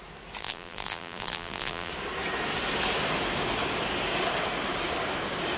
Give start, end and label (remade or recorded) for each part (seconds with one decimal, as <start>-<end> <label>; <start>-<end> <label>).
0.0-0.4 recorded; 0.4-1.9 remade; 1.9-5.6 recorded

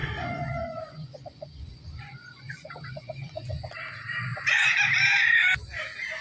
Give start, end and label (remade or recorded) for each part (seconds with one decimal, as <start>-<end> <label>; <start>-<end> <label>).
0.0-3.7 remade; 3.7-6.2 recorded

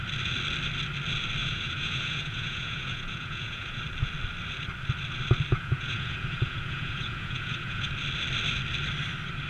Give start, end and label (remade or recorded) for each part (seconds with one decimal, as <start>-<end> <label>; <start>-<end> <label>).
0.0-1.4 recorded; 1.4-3.8 remade; 3.8-5.5 recorded; 5.5-7.9 remade; 7.9-9.5 recorded

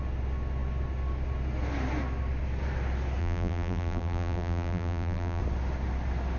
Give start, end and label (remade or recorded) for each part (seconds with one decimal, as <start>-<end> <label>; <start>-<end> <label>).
0.0-3.2 recorded; 3.2-5.4 remade; 5.4-6.4 recorded

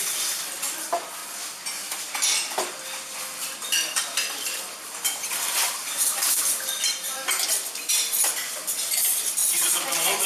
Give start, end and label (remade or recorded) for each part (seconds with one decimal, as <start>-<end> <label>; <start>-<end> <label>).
0.0-1.2 remade; 1.2-3.0 recorded; 3.0-10.3 remade

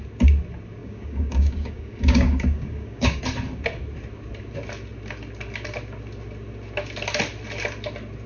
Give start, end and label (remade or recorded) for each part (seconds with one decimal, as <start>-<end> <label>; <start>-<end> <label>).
0.0-0.8 recorded; 0.8-3.2 remade; 3.2-8.3 recorded